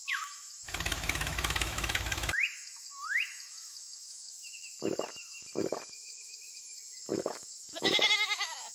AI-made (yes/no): yes